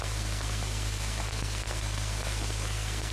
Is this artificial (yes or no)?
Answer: yes